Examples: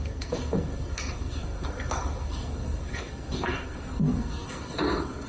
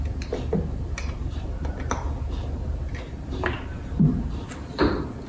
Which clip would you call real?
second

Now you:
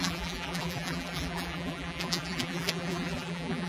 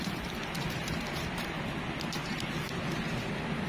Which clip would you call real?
second